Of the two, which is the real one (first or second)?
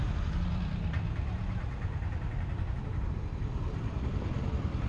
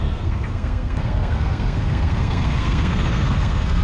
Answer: first